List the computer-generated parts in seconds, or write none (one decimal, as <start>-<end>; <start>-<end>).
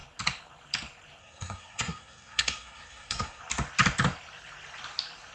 1.2-3.4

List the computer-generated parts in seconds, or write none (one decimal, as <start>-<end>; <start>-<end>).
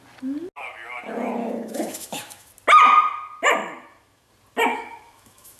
1.4-2.5; 3.6-4.3; 4.7-5.6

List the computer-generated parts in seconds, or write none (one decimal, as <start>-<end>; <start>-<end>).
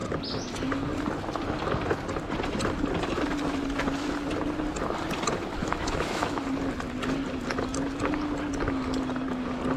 5.6-6.4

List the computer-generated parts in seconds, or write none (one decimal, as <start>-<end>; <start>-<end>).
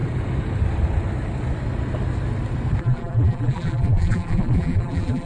2.8-5.3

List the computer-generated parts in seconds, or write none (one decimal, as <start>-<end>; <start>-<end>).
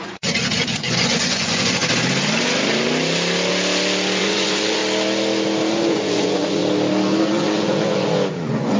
0.0-1.8; 4.2-4.8; 5.7-6.6; 7.2-8.8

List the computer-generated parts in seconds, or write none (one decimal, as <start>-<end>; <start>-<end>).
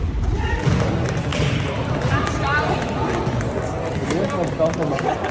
none